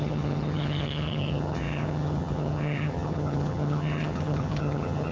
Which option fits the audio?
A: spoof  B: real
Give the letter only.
A